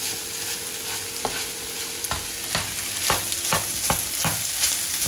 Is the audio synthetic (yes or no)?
no